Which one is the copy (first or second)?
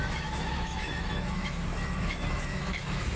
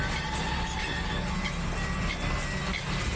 first